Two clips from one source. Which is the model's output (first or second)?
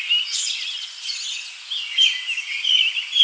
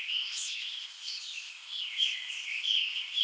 second